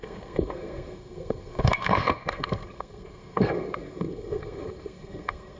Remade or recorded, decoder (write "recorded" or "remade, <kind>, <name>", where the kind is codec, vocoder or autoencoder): remade, codec, SNAC